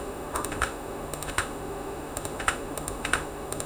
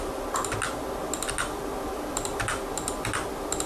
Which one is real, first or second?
second